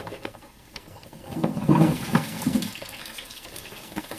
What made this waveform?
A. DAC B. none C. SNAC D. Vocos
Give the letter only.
C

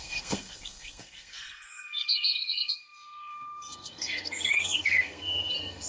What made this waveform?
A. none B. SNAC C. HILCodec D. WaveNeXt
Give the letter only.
B